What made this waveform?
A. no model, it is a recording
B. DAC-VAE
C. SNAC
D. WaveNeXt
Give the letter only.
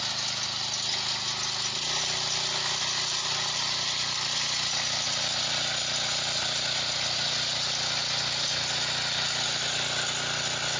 A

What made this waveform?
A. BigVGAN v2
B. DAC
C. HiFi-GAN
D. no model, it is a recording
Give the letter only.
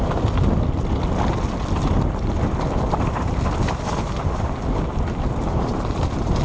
D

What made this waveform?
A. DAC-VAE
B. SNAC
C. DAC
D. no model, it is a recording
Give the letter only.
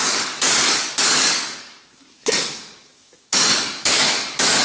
C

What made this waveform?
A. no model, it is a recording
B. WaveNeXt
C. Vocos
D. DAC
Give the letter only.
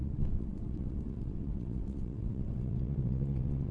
B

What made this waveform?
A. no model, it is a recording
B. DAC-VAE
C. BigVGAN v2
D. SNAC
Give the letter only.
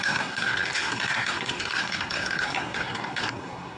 D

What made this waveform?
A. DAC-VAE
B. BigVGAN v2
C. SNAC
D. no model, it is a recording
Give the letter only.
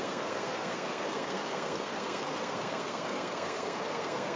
C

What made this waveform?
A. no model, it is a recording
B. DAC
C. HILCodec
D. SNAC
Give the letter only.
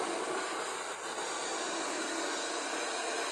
A